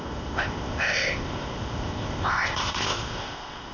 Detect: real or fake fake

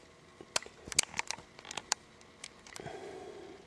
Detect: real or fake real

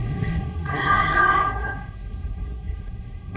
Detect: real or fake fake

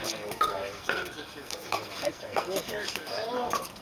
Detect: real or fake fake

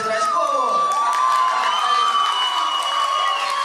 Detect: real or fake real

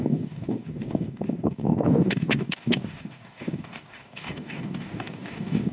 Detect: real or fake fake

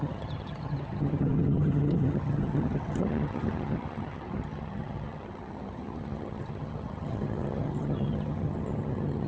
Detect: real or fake fake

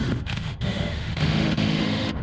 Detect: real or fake fake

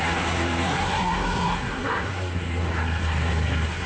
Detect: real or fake fake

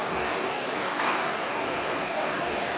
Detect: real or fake fake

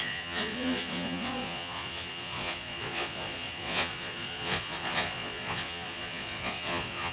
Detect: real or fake fake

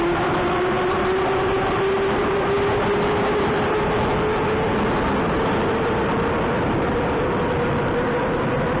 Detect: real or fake real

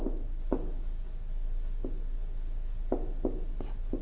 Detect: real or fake real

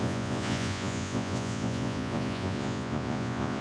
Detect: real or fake fake